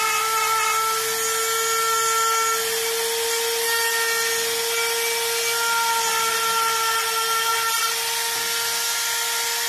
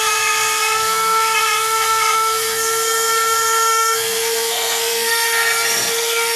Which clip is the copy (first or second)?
second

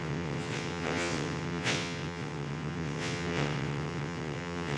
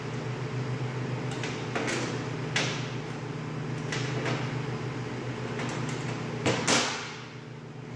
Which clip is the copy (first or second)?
first